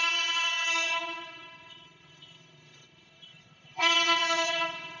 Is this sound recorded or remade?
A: remade